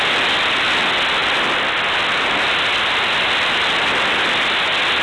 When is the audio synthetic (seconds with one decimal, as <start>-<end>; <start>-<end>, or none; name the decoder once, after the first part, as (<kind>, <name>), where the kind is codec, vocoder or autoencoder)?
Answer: none